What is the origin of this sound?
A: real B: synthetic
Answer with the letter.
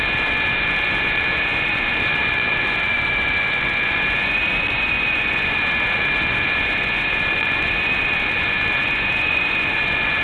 B